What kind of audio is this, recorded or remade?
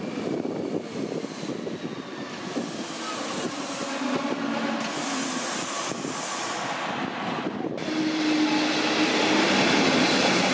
recorded